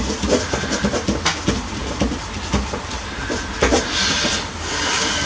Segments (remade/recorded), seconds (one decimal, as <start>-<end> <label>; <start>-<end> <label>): 0.0-5.3 recorded